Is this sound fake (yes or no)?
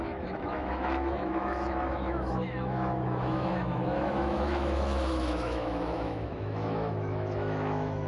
yes